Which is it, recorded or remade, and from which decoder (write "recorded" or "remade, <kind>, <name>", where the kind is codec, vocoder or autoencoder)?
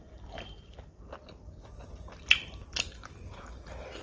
remade, vocoder, BigVGAN v2